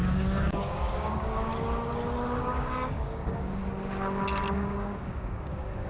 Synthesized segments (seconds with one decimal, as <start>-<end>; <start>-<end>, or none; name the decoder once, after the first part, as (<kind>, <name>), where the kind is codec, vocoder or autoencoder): 0.0-1.5 (codec, DAC); 2.4-3.6; 4.5-5.9